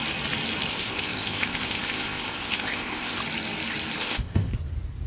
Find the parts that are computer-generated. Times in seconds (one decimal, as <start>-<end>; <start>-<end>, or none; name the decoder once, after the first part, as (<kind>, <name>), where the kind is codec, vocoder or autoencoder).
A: 0.7-3.2 (codec, ZipCodec); 4.0-4.5